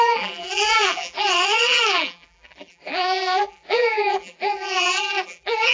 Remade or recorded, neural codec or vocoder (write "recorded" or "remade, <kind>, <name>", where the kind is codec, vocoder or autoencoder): remade, vocoder, BigVGAN v2